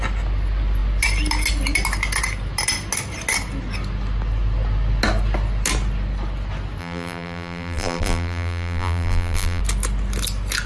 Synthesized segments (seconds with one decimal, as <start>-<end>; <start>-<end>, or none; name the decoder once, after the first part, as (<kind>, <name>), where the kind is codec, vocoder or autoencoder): 6.8-9.6 (vocoder, BigVGAN v2)